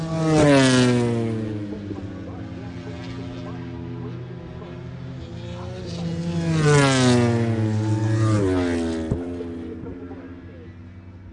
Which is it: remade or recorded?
recorded